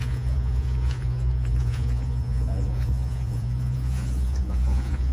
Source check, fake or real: fake